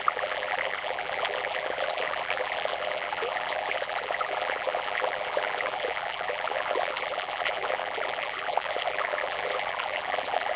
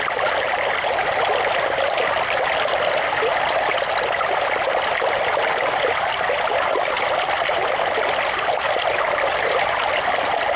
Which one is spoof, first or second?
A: first